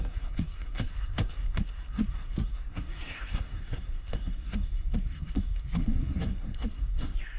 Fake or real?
fake